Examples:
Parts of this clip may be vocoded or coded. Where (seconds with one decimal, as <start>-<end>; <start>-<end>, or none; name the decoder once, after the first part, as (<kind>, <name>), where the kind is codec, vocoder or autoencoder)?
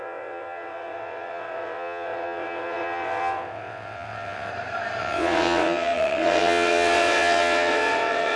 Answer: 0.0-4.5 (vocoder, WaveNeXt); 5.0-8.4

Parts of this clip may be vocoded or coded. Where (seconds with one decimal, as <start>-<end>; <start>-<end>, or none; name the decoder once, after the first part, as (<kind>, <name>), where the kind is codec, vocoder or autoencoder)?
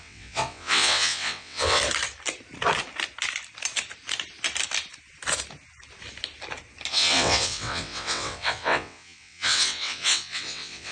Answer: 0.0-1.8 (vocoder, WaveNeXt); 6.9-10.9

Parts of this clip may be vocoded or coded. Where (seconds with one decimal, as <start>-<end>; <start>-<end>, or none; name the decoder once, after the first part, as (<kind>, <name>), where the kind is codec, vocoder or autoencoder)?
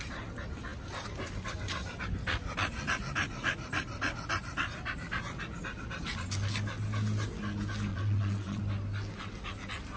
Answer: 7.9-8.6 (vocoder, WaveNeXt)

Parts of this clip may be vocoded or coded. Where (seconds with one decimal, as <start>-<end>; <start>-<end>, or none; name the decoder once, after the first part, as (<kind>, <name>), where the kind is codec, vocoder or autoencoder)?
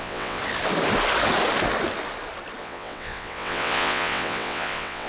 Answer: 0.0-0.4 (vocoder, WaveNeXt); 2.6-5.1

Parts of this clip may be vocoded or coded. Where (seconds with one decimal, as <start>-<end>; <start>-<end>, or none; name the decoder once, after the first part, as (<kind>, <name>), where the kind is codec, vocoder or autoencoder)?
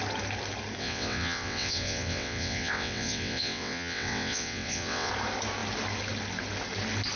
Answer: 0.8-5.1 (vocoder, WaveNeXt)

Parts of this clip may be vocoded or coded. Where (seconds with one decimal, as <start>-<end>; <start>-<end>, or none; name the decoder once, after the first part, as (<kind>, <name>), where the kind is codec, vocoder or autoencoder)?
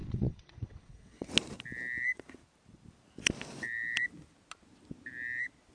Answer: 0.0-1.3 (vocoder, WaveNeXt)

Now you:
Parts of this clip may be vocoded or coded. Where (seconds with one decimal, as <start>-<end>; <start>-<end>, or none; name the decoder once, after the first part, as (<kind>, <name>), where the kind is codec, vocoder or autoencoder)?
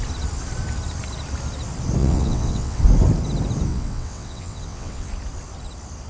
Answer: 2.0-2.8 (vocoder, WaveNeXt); 3.7-5.1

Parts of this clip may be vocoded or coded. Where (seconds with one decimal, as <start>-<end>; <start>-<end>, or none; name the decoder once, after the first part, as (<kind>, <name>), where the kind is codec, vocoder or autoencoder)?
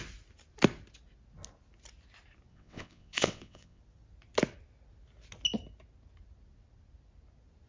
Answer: 2.5-3.8 (vocoder, WaveNeXt)